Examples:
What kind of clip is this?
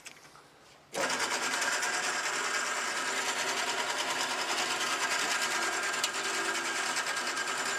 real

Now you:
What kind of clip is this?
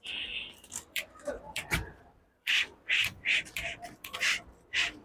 fake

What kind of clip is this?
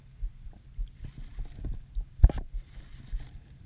real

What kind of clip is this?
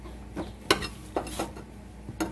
real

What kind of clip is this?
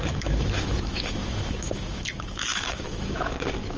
fake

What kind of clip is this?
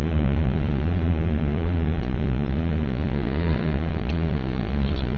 fake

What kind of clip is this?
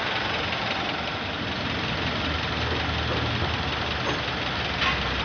real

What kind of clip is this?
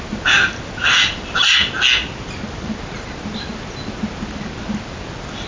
real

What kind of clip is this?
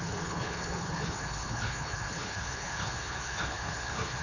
fake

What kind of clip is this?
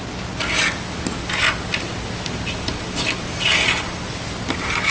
real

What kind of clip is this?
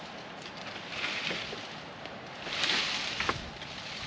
real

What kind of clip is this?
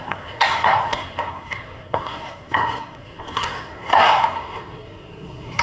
fake